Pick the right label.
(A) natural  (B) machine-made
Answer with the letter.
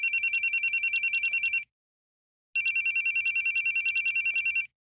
A